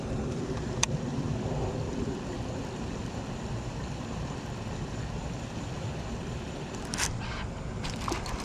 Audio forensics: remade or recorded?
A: recorded